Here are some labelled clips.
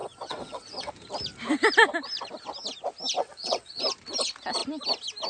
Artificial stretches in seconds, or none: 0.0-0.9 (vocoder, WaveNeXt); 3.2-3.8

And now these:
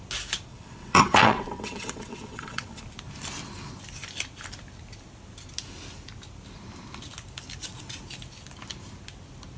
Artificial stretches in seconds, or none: 0.5-2.8 (vocoder, WaveNeXt)

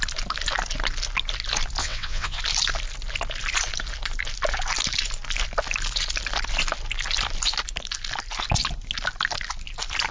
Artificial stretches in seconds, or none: 1.8-2.4 (vocoder, WaveNeXt)

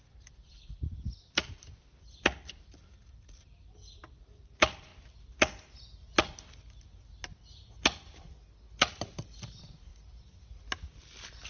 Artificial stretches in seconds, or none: none

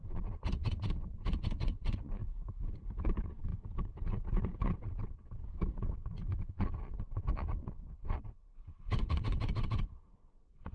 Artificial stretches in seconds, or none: 0.0-2.2 (vocoder, WaveNeXt); 3.0-10.7

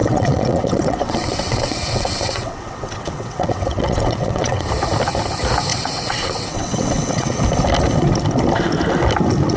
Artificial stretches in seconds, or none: 0.0-4.7 (vocoder, WaveNeXt); 5.7-7.4

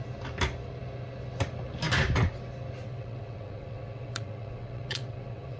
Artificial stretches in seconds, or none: 2.8-5.6 (vocoder, WaveNeXt)

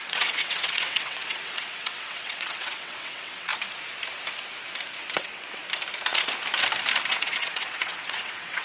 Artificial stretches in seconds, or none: 0.0-3.5 (vocoder, WaveNeXt); 5.0-5.6; 7.1-8.6